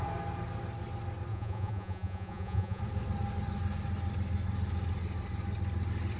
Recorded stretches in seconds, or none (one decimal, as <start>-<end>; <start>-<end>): 0.0-1.3; 2.8-6.2